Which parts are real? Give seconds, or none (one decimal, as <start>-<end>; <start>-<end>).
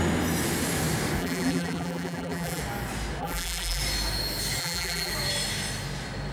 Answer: 0.0-1.2; 2.6-3.2; 3.8-4.6; 5.1-6.3